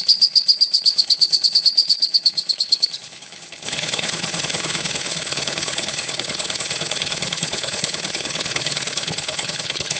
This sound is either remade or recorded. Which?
remade